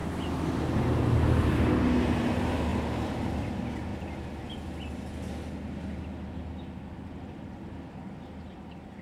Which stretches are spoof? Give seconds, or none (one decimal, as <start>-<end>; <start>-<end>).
2.7-3.5